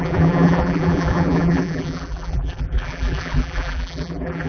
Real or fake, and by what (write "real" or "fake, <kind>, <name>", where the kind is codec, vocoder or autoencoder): fake, vocoder, BigVGAN v2